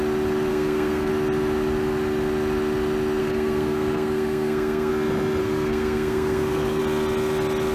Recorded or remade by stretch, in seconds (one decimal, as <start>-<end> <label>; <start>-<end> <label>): 0.0-0.5 recorded; 0.5-1.1 remade; 1.1-3.2 recorded; 3.2-4.9 remade; 4.9-5.4 recorded; 5.4-6.8 remade; 6.8-7.7 recorded